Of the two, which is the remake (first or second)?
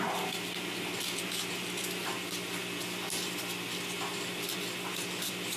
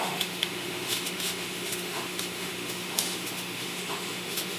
second